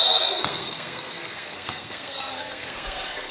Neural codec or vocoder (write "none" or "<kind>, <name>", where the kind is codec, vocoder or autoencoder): codec, SNAC